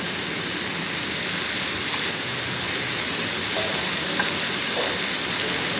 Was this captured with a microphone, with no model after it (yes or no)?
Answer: yes